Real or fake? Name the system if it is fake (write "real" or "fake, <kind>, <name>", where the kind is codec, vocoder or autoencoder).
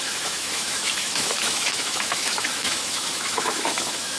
fake, autoencoder, DAC-VAE